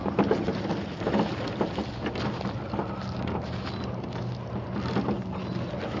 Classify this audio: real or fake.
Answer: real